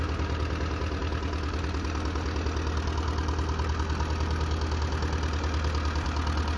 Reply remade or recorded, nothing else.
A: recorded